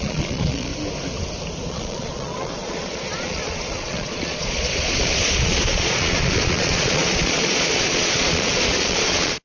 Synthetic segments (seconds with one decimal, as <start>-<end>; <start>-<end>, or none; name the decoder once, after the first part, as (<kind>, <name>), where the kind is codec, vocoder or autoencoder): 0.0-0.7 (vocoder, Vocos); 1.7-9.4